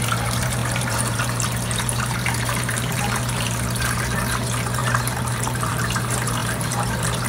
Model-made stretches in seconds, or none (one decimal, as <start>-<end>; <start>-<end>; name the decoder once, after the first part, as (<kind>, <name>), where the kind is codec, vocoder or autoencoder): 0.0-7.3 (vocoder, BigVGAN v2)